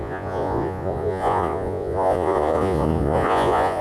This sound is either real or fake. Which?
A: fake